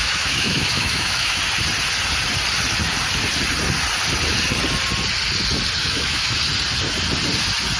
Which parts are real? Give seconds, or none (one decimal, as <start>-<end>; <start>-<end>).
1.4-5.8; 6.4-7.8